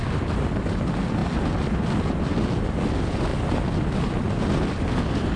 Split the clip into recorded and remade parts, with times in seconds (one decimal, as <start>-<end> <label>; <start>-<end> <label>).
0.0-3.3 recorded; 3.3-4.9 remade; 4.9-5.4 recorded